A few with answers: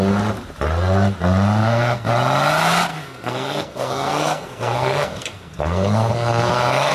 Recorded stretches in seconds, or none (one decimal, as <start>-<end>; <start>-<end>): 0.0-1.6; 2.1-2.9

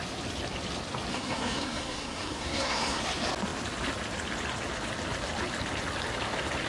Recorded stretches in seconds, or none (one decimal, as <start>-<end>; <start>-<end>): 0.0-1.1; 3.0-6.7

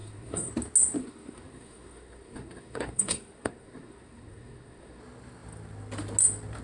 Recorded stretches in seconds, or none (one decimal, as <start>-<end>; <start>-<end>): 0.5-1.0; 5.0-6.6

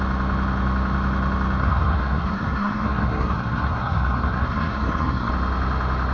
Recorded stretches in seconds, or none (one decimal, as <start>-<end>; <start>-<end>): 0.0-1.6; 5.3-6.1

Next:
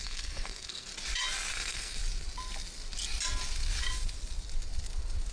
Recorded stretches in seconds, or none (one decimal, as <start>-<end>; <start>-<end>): 0.9-1.5; 2.0-5.3